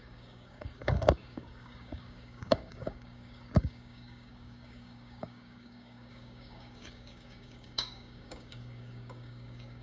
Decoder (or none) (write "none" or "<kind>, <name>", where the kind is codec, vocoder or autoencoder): codec, DAC